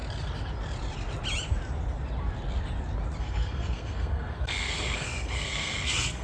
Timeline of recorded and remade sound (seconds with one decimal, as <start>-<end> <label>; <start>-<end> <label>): 0.0-3.2 recorded; 3.2-6.2 remade